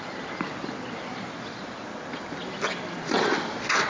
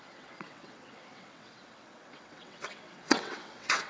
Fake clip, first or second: second